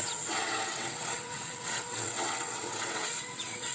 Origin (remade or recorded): remade